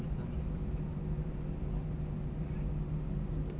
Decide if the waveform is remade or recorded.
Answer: recorded